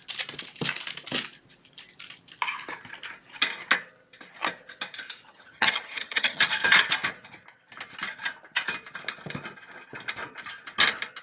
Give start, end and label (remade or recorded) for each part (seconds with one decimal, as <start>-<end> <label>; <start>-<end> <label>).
0.0-5.3 recorded; 5.3-6.5 remade; 6.5-11.2 recorded